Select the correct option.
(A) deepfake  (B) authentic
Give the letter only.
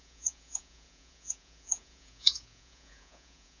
A